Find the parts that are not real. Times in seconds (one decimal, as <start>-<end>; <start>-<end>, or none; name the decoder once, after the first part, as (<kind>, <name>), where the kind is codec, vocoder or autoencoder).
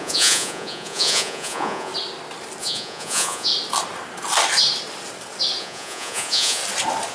0.0-1.9 (vocoder, Vocos); 2.6-3.5; 5.6-6.6